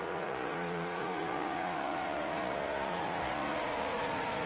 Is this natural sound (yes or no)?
no